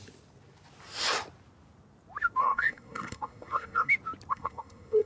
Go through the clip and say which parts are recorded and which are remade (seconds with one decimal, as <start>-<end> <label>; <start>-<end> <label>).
0.0-2.4 recorded; 2.4-3.9 remade; 3.9-4.3 recorded; 4.3-5.1 remade